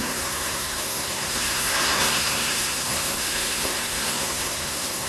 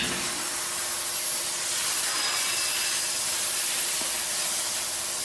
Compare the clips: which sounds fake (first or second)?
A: first